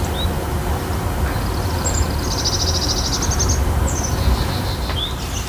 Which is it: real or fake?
real